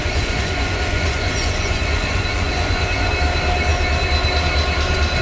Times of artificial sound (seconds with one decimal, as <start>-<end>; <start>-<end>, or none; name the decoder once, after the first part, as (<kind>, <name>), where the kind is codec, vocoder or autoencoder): 0.0-3.1 (vocoder, Vocos)